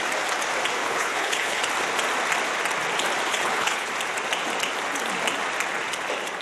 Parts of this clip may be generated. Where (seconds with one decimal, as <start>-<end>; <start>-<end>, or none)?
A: 0.8-1.6; 3.3-3.9